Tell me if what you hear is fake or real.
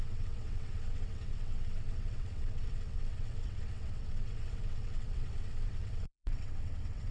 fake